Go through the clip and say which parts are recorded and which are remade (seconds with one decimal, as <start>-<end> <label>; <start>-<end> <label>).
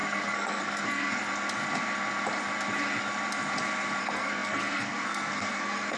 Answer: 0.0-1.2 remade; 1.2-4.0 recorded; 4.0-6.0 remade